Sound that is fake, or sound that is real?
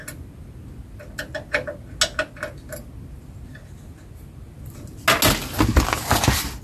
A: real